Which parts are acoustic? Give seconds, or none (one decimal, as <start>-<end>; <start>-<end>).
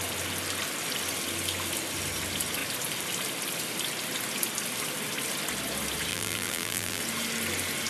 0.0-6.1; 7.0-7.9